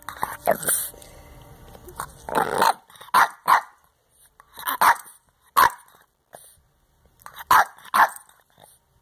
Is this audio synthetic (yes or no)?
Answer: no